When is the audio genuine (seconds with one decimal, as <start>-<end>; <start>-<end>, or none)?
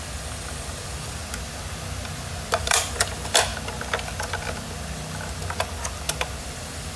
1.2-2.6; 3.5-6.4